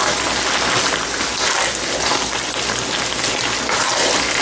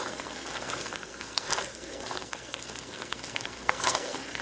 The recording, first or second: first